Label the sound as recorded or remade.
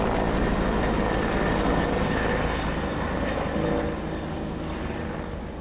recorded